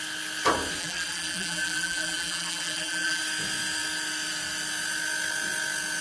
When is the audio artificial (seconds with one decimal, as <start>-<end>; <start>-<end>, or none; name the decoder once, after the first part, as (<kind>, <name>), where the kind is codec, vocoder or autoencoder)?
0.8-3.2 (vocoder, BigVGAN v2)